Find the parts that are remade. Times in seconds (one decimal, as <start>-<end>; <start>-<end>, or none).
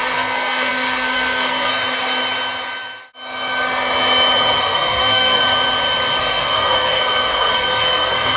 0.0-1.7; 4.6-5.4; 6.2-8.4